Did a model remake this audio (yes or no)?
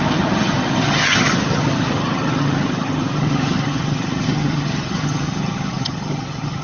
yes